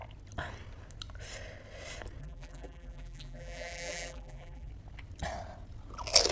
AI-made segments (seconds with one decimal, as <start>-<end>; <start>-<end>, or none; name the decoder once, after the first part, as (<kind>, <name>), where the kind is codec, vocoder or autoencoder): 2.2-4.7 (vocoder, BigVGAN v2)